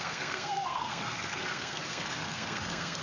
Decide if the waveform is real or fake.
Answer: fake